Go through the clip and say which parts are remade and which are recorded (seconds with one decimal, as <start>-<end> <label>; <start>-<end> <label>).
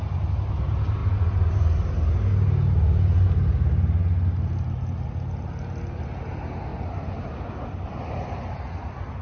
0.0-6.7 recorded; 6.7-8.0 remade; 8.0-9.2 recorded